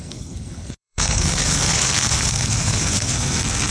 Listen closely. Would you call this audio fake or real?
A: fake